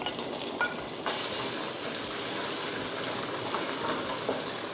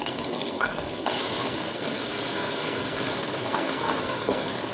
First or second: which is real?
first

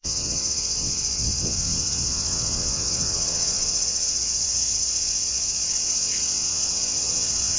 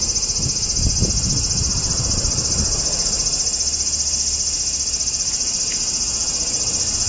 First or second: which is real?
second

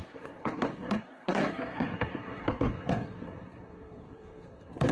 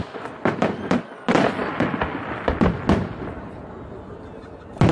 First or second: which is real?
second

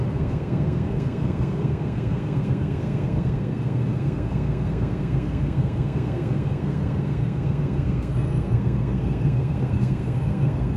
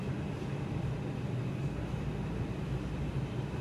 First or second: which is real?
second